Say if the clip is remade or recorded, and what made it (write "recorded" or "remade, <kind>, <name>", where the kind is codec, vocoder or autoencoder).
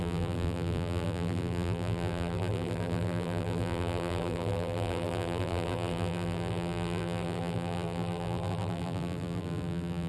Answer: remade, vocoder, BigVGAN v2